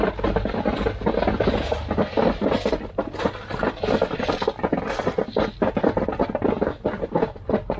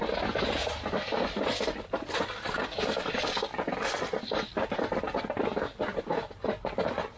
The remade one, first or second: second